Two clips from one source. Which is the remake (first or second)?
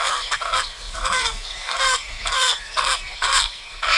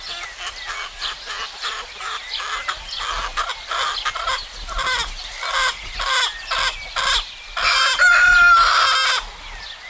first